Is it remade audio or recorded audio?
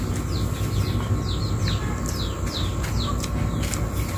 recorded